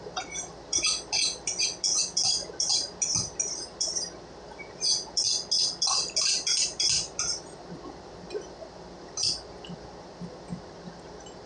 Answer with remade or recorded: recorded